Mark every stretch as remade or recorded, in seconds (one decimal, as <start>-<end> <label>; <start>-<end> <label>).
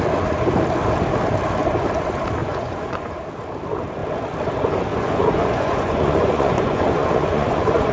0.0-2.4 recorded; 2.4-3.1 remade; 3.1-4.9 recorded; 4.9-7.9 remade